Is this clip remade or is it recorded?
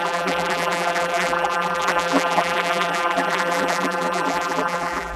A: remade